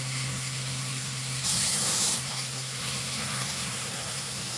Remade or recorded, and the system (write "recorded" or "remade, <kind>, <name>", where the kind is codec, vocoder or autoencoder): remade, codec, SNAC